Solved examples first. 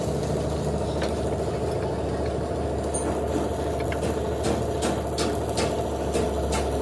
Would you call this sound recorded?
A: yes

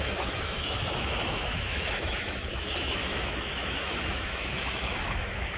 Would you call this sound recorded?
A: no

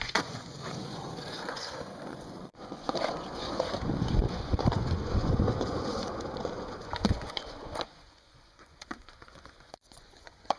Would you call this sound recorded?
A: no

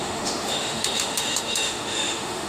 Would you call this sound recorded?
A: no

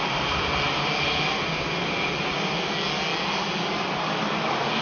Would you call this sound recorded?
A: yes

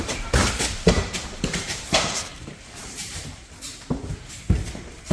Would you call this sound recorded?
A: no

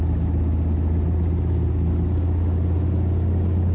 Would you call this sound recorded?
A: yes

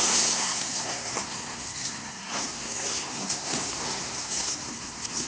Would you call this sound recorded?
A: no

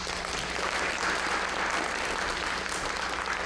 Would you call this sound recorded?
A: yes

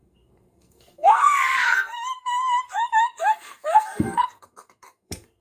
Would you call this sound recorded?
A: no